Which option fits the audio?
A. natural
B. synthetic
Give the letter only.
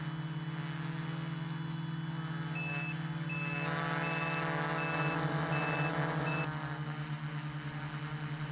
A